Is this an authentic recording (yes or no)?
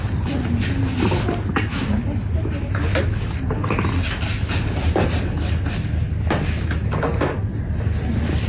yes